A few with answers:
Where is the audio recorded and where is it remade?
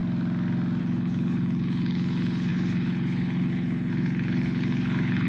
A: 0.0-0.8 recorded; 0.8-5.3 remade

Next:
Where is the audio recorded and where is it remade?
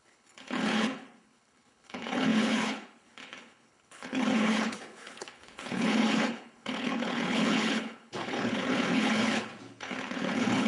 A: 0.0-10.7 remade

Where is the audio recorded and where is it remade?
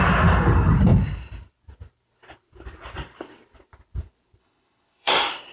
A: 0.0-4.4 recorded; 4.4-5.1 remade; 5.1-5.5 recorded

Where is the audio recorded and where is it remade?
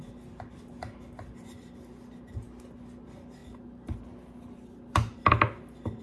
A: 0.0-6.0 recorded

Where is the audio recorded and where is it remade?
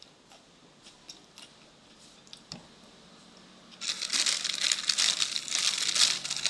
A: 0.0-6.5 recorded